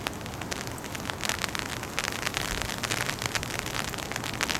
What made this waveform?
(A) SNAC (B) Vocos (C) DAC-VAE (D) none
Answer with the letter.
D